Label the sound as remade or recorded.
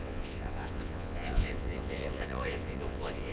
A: remade